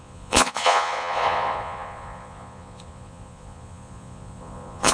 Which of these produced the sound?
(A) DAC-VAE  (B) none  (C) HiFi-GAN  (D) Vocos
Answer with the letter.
D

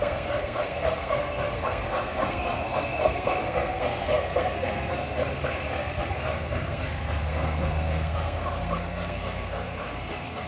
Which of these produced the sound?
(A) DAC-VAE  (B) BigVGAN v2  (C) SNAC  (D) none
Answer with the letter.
C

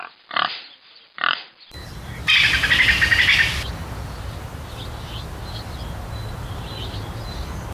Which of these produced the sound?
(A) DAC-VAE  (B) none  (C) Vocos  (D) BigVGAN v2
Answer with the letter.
B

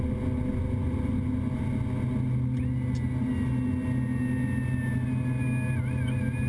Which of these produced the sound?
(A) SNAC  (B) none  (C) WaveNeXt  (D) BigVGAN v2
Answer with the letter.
B